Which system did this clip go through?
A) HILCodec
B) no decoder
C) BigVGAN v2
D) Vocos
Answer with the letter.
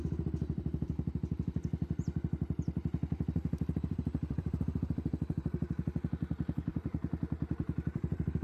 C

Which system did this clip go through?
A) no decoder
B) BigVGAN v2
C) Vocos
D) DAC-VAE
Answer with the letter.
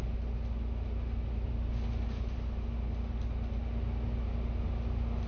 A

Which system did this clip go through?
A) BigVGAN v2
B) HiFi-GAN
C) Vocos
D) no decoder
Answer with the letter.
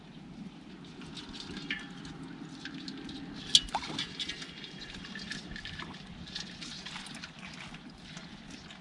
D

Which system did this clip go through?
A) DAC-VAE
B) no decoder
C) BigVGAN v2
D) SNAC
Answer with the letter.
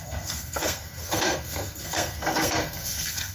D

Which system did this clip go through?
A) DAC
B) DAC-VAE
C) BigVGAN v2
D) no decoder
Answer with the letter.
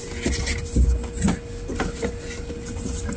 D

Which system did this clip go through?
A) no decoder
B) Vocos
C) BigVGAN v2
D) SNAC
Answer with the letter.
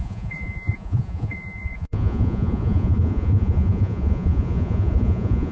B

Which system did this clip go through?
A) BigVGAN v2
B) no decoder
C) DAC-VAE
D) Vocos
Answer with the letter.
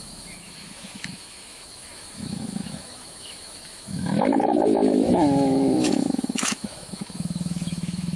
C